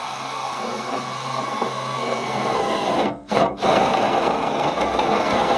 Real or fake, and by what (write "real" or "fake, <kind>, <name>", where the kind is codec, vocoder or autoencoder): fake, codec, SNAC